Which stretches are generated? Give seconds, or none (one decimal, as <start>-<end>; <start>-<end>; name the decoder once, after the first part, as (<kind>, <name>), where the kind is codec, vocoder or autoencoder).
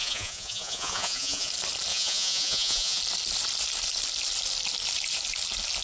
0.0-1.5 (vocoder, Vocos); 1.9-3.0